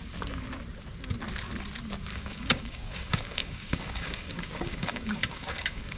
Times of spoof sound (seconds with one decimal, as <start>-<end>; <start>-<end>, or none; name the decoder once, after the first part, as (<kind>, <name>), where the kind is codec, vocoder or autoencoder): 2.1-6.0 (codec, DAC)